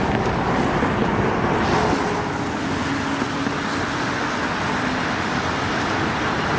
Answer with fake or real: real